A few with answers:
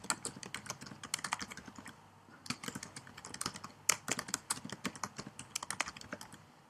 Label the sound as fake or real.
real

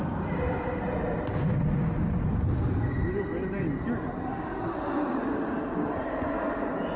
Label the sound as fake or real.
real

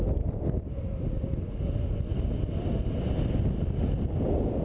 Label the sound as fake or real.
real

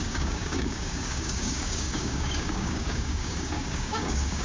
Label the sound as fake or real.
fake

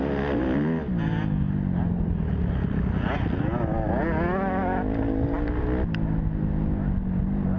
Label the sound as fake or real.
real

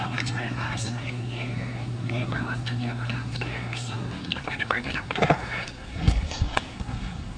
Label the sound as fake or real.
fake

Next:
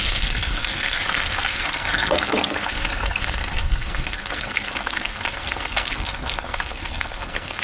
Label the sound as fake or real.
fake